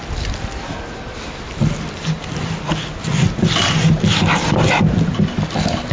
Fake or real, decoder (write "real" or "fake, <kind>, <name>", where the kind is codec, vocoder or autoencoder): real